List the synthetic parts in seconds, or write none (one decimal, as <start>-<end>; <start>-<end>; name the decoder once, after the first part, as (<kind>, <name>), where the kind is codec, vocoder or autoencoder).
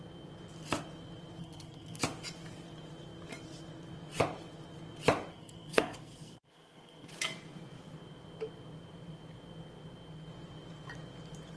1.4-2.0 (codec, SNAC); 5.3-7.1